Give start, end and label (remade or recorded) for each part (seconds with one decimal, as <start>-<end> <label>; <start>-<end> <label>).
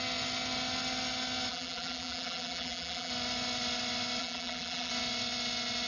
0.0-1.5 recorded; 1.5-3.1 remade; 3.1-4.2 recorded; 4.2-4.9 remade; 4.9-5.9 recorded